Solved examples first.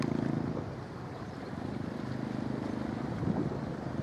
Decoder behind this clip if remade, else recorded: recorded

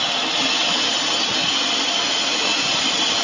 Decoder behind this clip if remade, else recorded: recorded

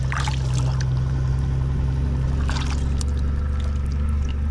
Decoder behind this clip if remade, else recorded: recorded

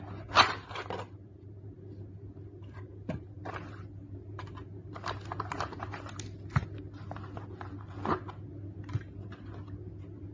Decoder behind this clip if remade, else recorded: recorded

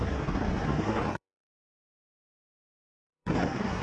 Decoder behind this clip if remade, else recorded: remade, codec, SNAC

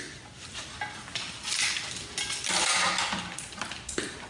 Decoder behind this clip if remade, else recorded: recorded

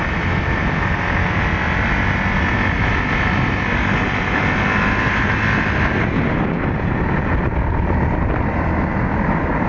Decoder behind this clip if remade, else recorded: recorded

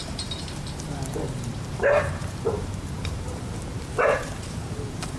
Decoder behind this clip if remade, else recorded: remade, vocoder, BigVGAN v2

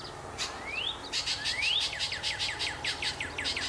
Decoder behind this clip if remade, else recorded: recorded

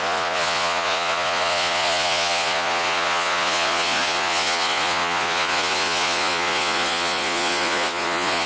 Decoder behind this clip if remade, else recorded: remade, vocoder, Vocos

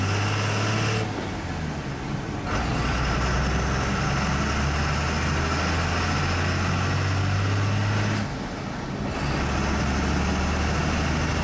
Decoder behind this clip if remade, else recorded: recorded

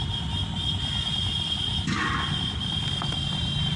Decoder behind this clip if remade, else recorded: recorded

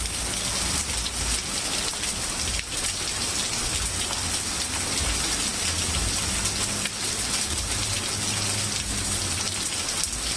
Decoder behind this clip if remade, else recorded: recorded